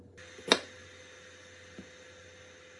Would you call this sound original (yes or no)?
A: yes